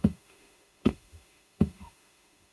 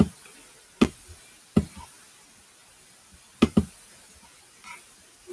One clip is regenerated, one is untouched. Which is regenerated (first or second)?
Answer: first